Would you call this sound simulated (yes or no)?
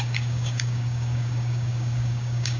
yes